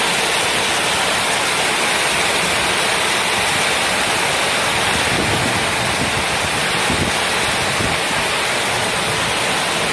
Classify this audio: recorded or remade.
recorded